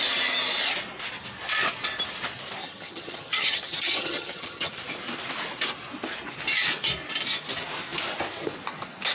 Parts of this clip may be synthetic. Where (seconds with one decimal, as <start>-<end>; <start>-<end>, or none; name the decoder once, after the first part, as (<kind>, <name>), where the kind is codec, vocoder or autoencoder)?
2.6-4.7 (vocoder, HiFi-GAN)